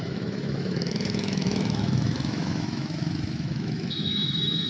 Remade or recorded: remade